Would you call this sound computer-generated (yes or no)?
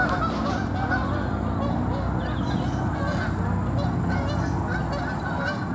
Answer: no